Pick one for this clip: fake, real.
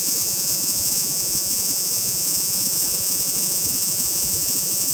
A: fake